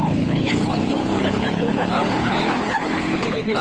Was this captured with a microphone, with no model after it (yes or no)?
no